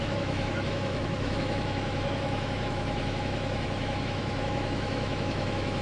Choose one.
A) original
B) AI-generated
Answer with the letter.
B